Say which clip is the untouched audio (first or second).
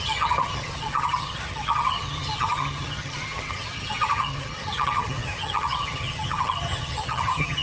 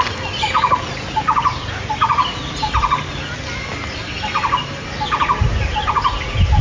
second